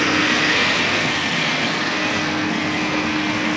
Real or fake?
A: fake